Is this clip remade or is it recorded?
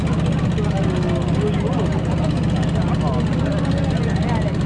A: recorded